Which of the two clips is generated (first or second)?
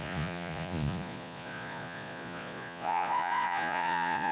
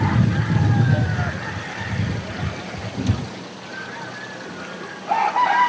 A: first